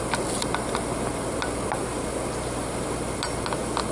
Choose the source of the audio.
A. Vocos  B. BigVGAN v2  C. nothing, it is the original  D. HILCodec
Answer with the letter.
C